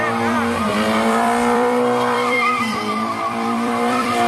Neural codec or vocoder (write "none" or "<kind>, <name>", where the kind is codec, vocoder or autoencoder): vocoder, BigVGAN v2